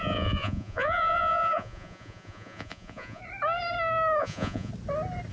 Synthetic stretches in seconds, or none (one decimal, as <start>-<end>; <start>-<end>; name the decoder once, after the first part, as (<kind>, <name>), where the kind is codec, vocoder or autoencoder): 0.0-3.2 (vocoder, Vocos); 4.2-4.7